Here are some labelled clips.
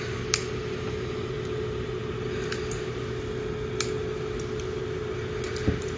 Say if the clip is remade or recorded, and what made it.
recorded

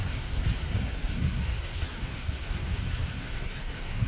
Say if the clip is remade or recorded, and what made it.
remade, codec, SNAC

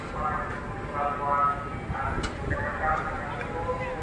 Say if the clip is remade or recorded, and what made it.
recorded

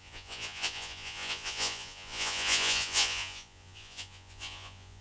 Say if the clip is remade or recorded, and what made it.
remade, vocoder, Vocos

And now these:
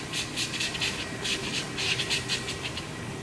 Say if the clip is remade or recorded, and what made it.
recorded